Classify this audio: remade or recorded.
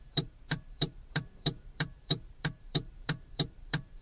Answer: remade